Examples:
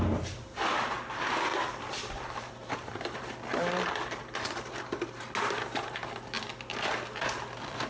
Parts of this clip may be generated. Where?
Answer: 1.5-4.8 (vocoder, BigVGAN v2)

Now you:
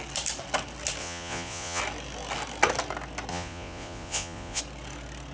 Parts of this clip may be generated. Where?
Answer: 1.0-1.8 (vocoder, Vocos); 3.3-4.6

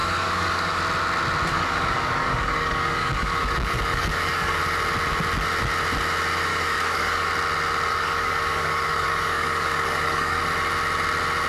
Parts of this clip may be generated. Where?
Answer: 0.0-0.8 (codec, DAC); 1.5-4.6; 6.5-7.3; 7.9-10.4

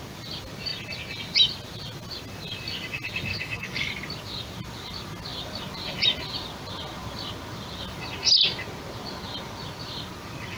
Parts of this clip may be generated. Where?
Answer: 3.3-3.9 (codec, DAC)

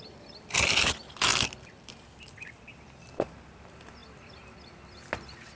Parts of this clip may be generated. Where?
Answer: none

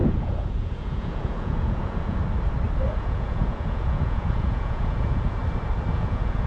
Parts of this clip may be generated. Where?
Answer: 0.0-2.2 (vocoder, Vocos); 2.9-5.4; 5.9-6.5

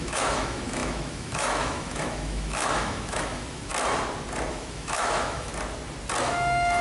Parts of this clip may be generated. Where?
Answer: 0.0-3.7 (autoencoder, DAC-VAE); 4.5-5.5; 6.2-6.8